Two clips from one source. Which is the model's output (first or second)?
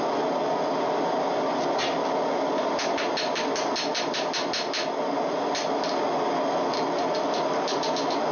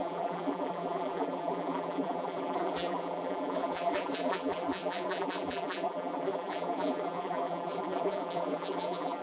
second